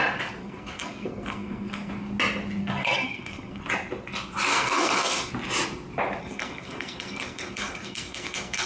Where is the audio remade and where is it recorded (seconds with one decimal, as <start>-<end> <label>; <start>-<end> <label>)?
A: 0.0-0.4 recorded; 0.4-1.9 remade; 1.9-2.6 recorded; 2.6-3.6 remade; 3.6-4.5 recorded; 4.5-5.3 remade; 5.3-6.2 recorded; 6.2-8.7 remade